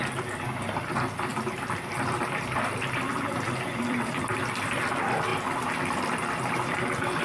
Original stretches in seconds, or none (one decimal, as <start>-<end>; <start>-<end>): 0.0-1.3; 4.8-5.3; 6.8-7.2